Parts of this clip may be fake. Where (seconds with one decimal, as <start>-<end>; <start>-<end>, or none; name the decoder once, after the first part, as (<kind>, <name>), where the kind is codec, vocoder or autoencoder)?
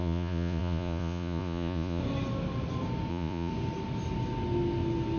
0.0-2.0 (vocoder, Vocos); 3.1-3.5